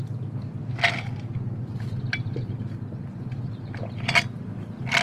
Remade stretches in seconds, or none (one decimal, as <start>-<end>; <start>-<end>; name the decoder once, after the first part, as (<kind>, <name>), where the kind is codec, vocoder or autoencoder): none